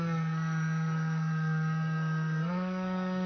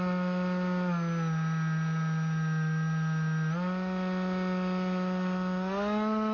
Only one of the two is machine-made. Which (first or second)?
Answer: first